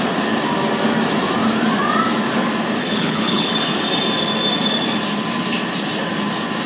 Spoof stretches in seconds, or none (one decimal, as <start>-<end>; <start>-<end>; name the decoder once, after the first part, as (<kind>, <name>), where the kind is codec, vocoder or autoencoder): 2.8-3.5 (codec, HILCodec)